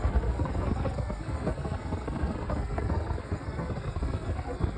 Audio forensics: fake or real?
fake